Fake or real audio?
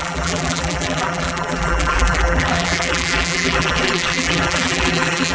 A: fake